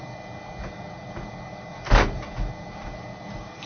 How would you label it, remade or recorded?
recorded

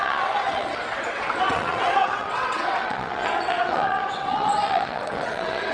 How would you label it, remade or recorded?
remade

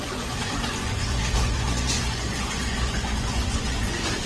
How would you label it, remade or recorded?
remade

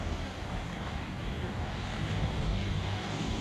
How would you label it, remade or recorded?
remade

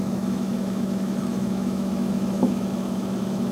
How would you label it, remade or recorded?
remade